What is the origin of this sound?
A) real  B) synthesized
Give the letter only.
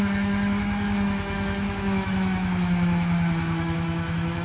B